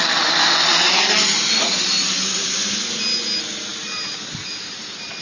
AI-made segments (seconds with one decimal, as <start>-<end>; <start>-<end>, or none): none